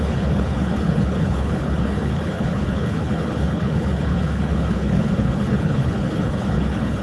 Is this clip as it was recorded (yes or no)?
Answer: no